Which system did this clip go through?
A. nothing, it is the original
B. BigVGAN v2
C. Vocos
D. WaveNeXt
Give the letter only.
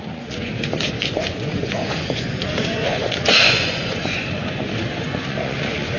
C